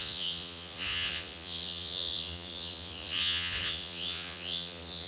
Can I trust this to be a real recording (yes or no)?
no